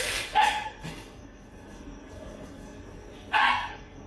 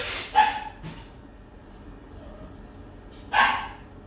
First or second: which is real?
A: second